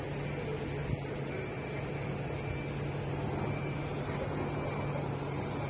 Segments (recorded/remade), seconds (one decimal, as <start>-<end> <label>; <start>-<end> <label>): 0.0-5.7 recorded